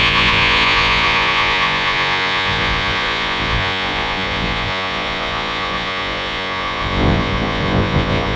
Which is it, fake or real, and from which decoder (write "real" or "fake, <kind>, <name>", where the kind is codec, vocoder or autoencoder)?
fake, vocoder, Vocos